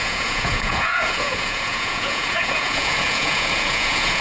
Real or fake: fake